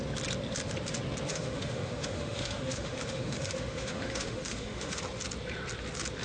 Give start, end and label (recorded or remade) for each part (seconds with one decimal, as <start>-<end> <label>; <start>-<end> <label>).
0.0-1.3 recorded; 1.3-5.0 remade; 5.0-6.2 recorded